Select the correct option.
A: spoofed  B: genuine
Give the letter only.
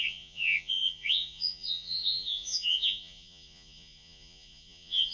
A